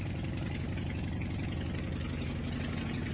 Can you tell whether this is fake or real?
real